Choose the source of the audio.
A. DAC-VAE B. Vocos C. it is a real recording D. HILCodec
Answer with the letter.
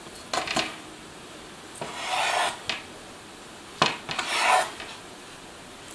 C